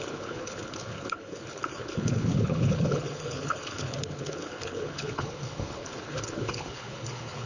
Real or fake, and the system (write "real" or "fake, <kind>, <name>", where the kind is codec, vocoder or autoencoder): fake, codec, HILCodec